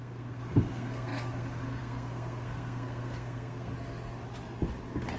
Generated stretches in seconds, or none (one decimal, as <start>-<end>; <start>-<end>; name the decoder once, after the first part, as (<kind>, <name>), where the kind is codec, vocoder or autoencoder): 0.0-3.7 (codec, SNAC)